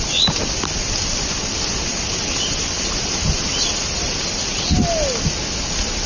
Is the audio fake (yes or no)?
no